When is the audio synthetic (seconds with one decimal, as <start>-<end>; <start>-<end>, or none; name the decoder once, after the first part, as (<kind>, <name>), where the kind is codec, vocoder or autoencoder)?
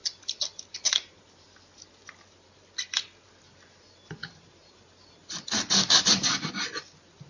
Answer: 4.2-6.5 (vocoder, BigVGAN v2)